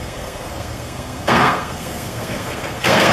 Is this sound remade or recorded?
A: remade